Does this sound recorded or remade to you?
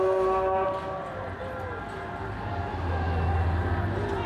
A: recorded